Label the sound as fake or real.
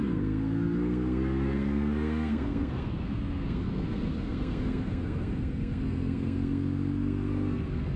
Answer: fake